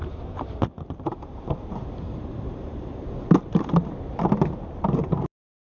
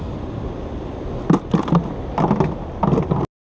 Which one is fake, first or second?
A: first